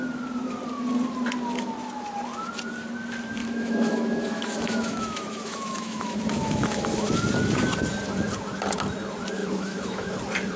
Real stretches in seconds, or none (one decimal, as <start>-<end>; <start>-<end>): 0.0-3.4; 7.1-9.4; 10.1-10.6